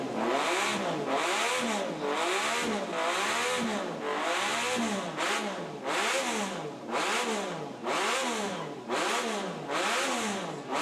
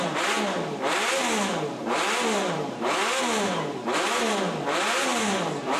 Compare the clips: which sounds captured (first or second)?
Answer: first